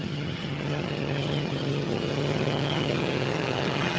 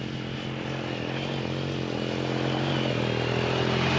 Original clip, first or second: second